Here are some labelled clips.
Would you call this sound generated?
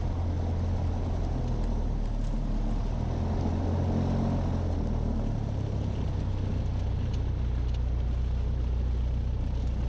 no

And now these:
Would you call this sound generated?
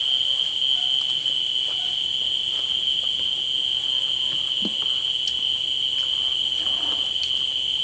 no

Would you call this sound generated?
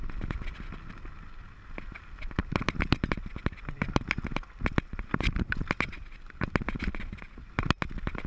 no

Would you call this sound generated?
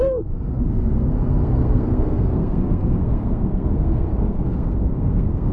yes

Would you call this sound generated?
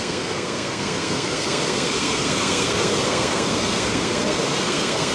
yes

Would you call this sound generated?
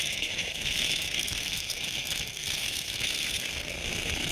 yes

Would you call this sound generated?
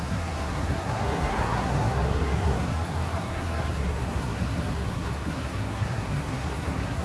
yes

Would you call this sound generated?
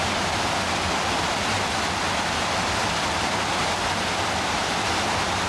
no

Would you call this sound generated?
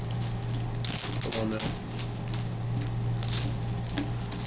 no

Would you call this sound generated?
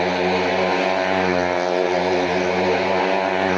no